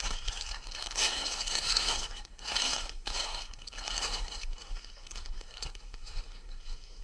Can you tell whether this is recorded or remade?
remade